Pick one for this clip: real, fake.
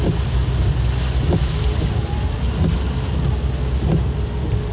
real